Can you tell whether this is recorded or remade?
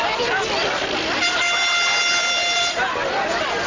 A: recorded